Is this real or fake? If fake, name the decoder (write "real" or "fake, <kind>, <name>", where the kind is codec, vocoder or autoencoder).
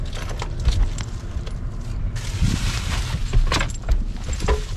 real